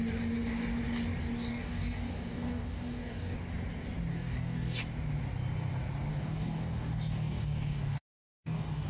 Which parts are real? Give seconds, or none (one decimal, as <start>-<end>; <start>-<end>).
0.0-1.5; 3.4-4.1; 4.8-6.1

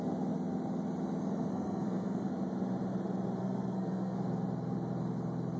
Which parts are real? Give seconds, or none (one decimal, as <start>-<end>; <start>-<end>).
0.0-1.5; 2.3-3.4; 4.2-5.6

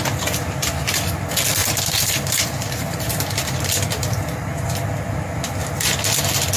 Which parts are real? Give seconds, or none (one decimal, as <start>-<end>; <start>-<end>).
0.0-1.6; 3.2-6.6

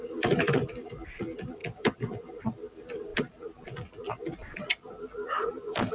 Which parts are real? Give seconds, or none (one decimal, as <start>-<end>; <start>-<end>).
3.1-5.5

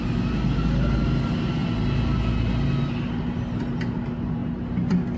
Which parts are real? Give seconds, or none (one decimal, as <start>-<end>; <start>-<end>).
0.0-5.2

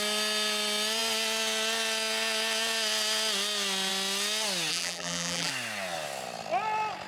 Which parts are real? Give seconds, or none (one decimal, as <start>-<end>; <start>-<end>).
0.0-4.7; 5.5-7.1

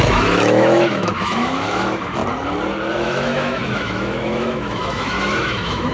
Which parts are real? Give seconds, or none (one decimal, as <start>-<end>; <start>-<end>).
2.2-2.9

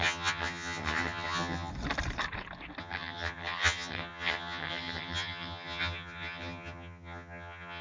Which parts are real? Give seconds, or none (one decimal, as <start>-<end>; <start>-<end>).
1.7-2.8